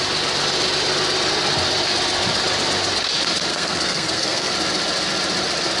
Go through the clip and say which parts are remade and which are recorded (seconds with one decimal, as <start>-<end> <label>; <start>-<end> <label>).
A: 0.0-3.5 recorded; 3.5-4.5 remade; 4.5-5.8 recorded